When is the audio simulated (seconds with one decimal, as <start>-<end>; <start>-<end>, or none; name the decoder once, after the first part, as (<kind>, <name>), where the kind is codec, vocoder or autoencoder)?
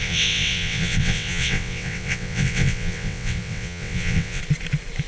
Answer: 0.0-4.4 (vocoder, WaveNeXt)